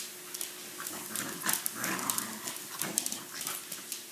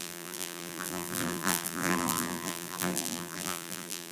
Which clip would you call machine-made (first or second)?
second